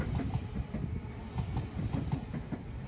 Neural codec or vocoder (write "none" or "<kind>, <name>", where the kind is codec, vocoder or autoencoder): none